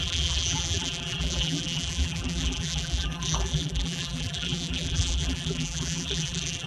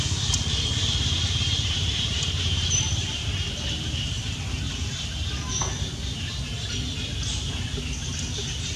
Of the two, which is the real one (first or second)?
second